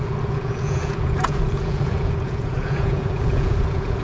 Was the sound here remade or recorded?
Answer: remade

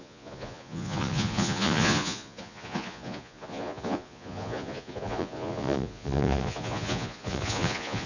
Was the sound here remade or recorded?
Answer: remade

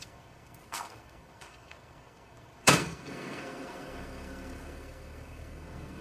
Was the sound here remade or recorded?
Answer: remade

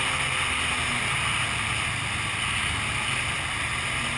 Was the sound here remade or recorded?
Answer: recorded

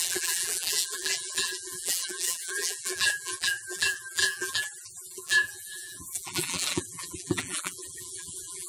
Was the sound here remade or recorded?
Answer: remade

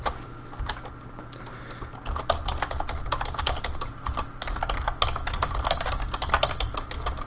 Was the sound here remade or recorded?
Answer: recorded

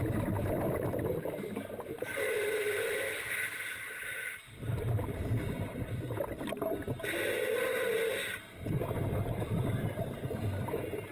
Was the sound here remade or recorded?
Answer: recorded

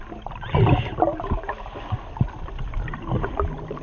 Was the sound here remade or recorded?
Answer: recorded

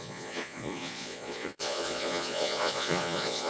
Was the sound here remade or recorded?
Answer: remade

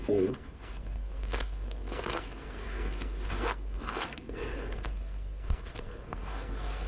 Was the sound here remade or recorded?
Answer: remade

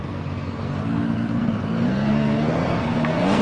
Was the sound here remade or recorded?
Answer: remade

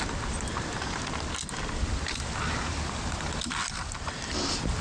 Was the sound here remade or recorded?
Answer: recorded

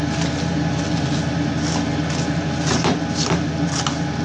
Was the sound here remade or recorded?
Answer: recorded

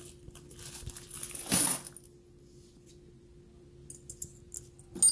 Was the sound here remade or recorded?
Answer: recorded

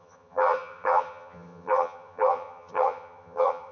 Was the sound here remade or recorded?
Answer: remade